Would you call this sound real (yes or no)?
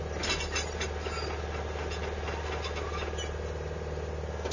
yes